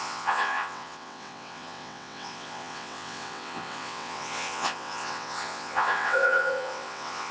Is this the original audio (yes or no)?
no